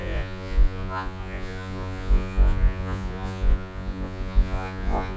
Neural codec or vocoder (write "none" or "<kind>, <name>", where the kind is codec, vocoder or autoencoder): vocoder, Vocos